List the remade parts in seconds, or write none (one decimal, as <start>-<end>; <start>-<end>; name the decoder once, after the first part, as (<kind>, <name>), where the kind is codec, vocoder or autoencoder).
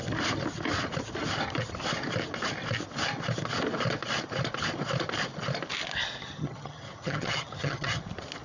6.2-8.0 (vocoder, HiFi-GAN)